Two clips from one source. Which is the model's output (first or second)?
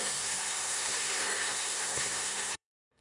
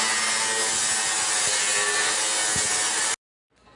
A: first